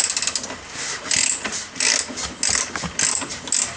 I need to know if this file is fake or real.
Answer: real